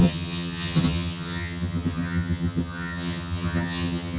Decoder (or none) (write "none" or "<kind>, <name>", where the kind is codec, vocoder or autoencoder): vocoder, HiFi-GAN